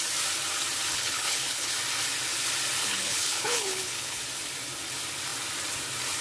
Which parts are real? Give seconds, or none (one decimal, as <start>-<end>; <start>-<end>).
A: 0.0-0.9; 1.7-2.8; 4.2-6.2